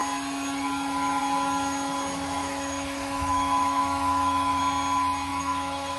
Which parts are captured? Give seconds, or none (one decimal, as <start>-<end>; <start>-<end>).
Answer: 0.0-2.4; 4.6-5.3